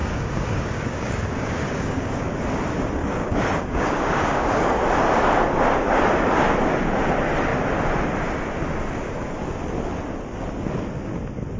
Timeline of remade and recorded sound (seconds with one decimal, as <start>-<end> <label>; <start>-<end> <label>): 0.0-2.4 remade; 2.4-3.0 recorded; 3.0-4.8 remade; 4.8-11.6 recorded